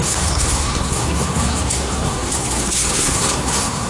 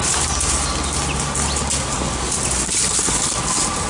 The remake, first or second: first